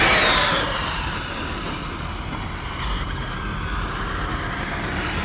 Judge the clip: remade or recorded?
remade